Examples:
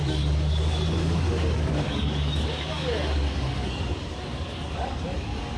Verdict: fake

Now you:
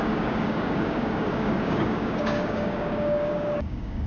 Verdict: fake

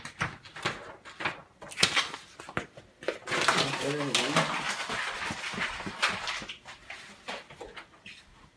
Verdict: real